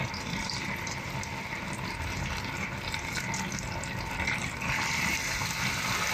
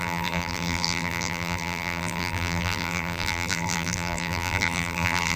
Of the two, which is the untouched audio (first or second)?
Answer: first